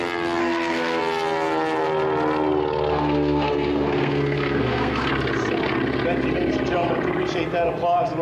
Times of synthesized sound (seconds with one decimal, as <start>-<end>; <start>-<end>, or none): 0.4-1.0; 2.9-5.1